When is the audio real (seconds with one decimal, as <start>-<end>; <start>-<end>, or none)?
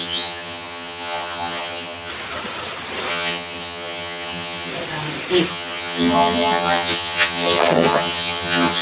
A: 2.1-3.1; 4.7-5.5